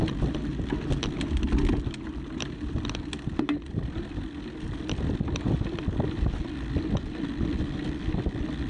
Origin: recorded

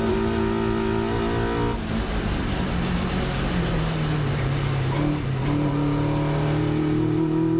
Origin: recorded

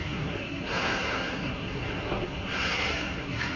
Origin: remade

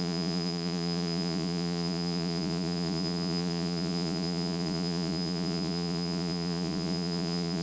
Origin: remade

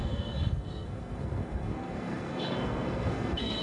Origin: remade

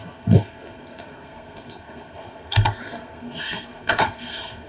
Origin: remade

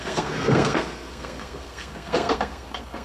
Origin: remade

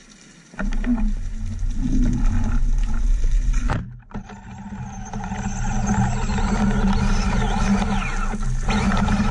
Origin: recorded